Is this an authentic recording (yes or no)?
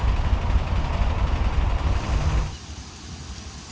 yes